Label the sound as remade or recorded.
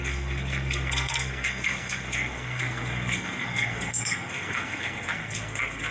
remade